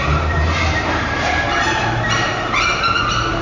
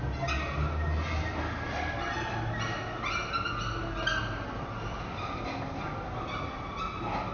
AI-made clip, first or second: first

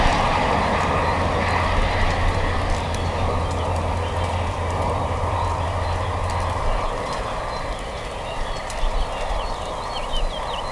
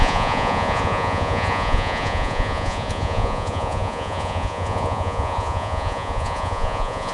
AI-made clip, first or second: second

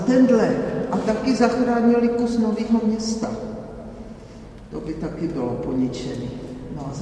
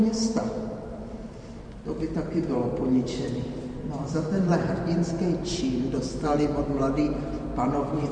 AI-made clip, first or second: second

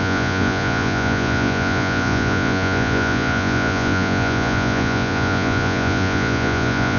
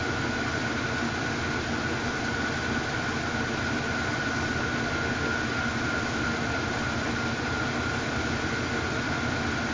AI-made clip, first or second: first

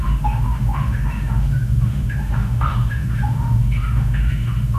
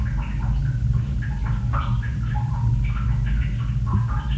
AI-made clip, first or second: first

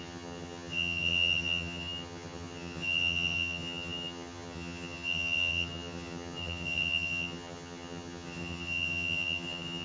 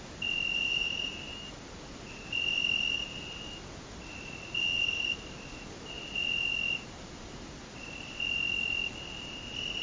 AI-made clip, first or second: first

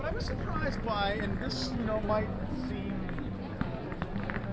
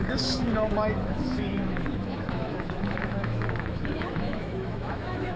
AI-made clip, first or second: second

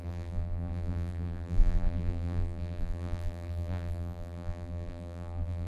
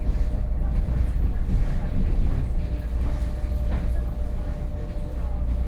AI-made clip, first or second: first